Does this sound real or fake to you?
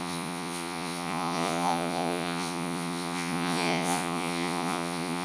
fake